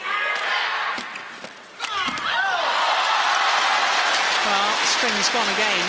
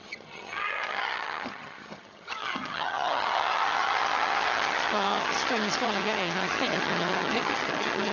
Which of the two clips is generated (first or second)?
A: second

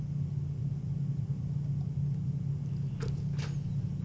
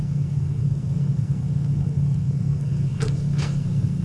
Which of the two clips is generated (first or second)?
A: second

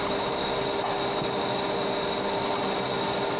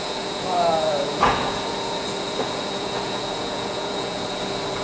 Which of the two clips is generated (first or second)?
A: second